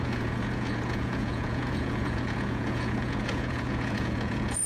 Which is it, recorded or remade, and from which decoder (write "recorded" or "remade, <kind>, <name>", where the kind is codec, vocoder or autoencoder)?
remade, vocoder, Vocos